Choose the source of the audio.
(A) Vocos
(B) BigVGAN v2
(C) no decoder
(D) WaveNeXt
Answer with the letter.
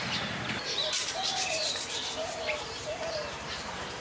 B